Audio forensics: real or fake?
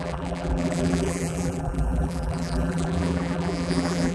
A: fake